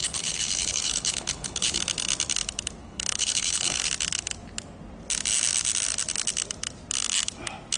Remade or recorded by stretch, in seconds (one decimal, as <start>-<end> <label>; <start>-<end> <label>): 0.0-1.8 remade; 1.8-2.8 recorded; 2.8-3.9 remade; 3.9-7.8 recorded